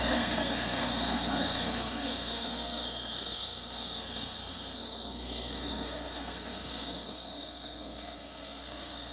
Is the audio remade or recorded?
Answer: remade